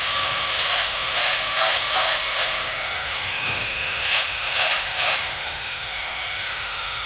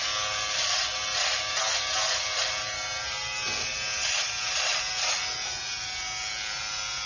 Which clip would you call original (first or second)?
second